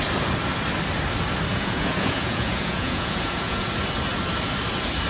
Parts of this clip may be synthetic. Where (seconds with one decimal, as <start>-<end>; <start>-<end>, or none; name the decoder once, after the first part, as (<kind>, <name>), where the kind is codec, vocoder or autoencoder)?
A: 1.5-3.7 (vocoder, Vocos)